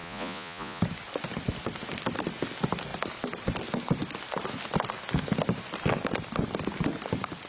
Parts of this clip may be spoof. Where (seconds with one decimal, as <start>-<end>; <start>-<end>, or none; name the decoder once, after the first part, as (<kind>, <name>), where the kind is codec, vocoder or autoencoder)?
0.0-0.8 (vocoder, Vocos)